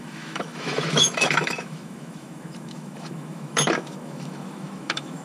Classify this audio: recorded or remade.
remade